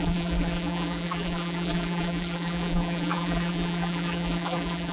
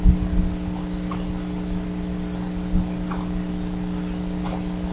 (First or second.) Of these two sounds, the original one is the second